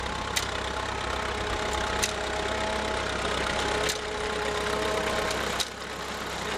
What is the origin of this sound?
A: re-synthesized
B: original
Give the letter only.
B